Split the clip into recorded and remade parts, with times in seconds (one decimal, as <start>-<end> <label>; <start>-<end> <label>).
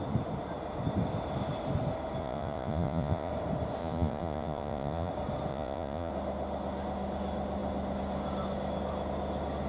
0.0-2.2 recorded; 2.2-3.3 remade; 3.3-3.8 recorded; 3.8-5.1 remade; 5.1-5.5 recorded; 5.5-6.1 remade; 6.1-9.7 recorded